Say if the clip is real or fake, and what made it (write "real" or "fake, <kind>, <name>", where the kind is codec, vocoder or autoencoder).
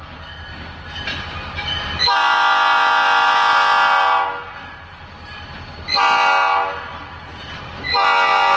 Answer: real